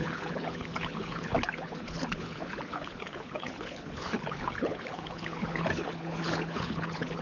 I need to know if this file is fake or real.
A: fake